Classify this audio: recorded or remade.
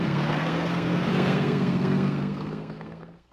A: remade